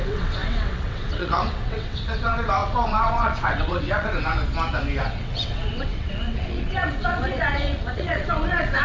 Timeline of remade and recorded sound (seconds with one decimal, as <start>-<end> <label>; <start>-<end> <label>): 0.0-4.4 remade; 4.4-5.0 recorded; 5.0-8.8 remade